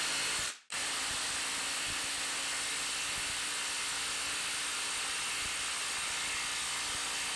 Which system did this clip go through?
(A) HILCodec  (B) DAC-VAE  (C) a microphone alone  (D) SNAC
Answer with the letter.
C